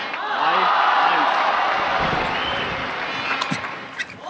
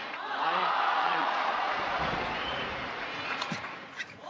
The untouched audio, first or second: first